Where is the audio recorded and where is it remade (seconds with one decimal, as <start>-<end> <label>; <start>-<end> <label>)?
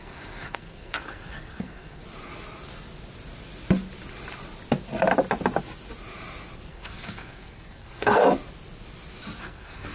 0.0-2.0 remade; 2.0-6.7 recorded; 6.7-8.2 remade; 8.2-9.4 recorded; 9.4-9.9 remade